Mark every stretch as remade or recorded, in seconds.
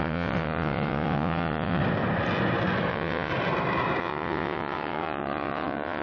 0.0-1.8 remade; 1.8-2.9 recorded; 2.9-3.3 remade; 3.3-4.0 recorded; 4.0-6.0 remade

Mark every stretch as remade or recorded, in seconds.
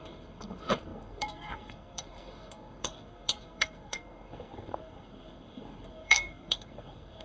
0.0-7.2 remade